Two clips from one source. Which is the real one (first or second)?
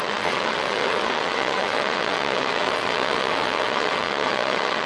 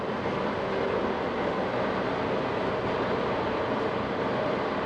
second